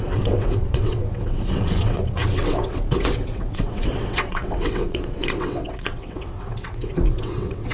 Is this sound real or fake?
fake